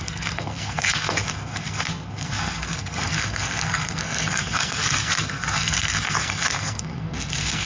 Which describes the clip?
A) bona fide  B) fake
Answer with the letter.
B